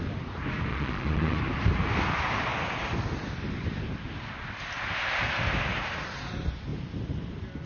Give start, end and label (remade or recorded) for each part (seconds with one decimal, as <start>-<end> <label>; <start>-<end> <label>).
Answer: 0.0-0.7 recorded; 0.7-1.4 remade; 1.4-7.7 recorded